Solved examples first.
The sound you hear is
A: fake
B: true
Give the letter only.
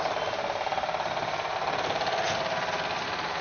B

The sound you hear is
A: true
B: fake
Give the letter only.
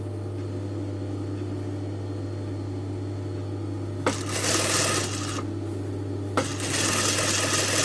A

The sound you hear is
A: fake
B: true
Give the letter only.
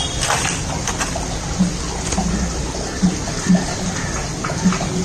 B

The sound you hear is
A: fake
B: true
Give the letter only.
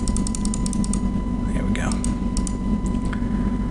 B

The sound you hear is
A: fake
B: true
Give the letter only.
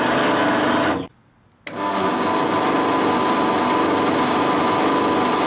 B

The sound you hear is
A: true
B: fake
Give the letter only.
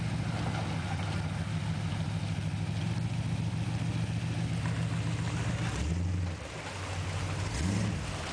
A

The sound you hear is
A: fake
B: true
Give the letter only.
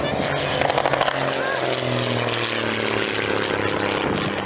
B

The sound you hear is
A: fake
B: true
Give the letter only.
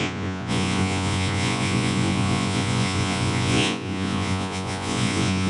A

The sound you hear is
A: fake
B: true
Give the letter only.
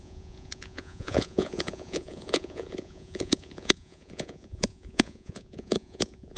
A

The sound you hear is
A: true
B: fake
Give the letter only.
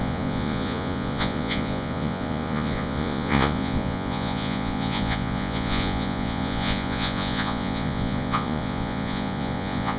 B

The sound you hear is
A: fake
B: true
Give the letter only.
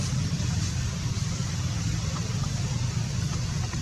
B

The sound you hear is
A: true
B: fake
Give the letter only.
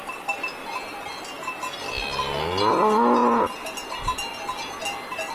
A